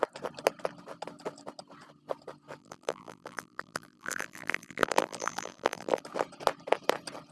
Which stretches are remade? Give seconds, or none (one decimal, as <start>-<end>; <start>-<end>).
2.6-6.0